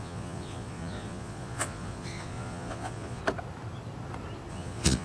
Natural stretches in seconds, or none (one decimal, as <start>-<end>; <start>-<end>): 3.2-4.5